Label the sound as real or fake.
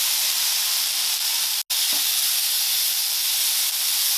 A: real